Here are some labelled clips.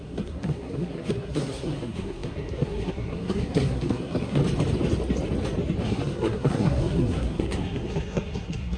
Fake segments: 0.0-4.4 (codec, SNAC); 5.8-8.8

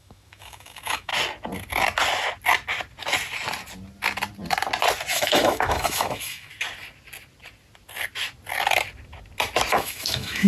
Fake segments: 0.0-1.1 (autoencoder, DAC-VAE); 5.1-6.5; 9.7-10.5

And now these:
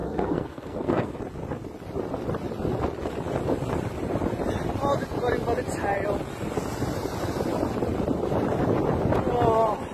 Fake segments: 0.0-1.2 (codec, SNAC)

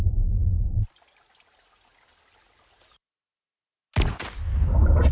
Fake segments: none

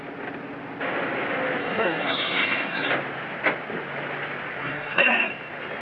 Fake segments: 1.6-2.9 (codec, SNAC); 4.6-5.3

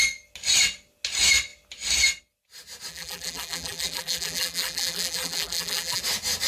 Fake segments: 2.9-6.0 (vocoder, BigVGAN v2)

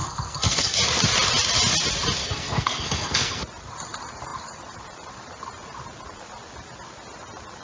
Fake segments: 0.0-0.8 (codec, SNAC); 2.2-3.4